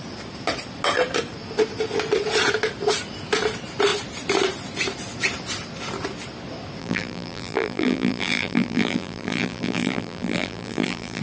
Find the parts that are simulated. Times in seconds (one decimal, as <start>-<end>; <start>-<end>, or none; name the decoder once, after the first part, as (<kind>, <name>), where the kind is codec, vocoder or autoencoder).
6.8-11.2 (vocoder, BigVGAN v2)